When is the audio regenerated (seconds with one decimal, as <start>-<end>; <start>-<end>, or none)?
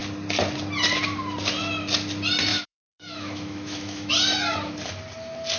2.5-4.1